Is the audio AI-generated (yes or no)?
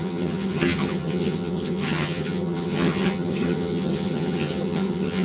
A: yes